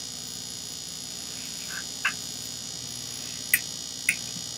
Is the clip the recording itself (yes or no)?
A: yes